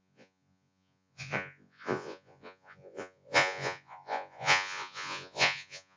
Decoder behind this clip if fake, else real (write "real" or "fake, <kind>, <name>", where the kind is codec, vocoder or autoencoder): fake, vocoder, Vocos